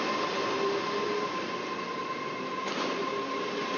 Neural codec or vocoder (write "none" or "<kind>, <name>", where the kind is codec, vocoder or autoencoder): none